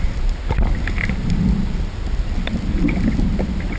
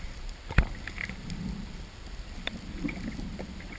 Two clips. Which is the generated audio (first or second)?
second